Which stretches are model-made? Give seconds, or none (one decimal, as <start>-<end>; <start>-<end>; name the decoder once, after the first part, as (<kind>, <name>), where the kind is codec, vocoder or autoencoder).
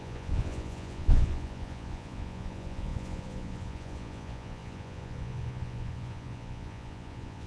0.0-7.5 (vocoder, Vocos)